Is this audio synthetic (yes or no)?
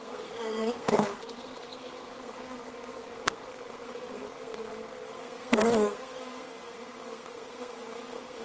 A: yes